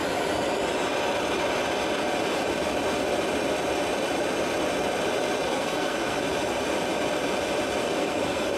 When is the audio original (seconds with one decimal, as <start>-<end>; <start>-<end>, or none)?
0.0-5.5; 6.2-7.8